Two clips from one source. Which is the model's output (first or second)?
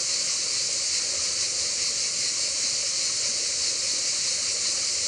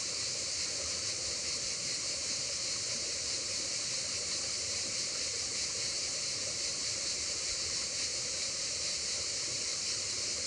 second